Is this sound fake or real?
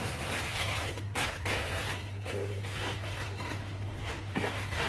fake